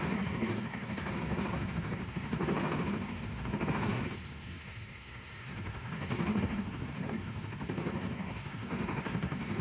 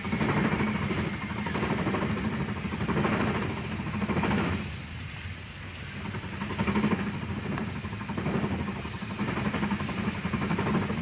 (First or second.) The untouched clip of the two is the second